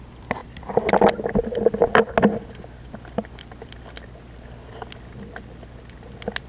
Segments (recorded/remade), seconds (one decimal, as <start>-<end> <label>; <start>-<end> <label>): 0.0-6.5 recorded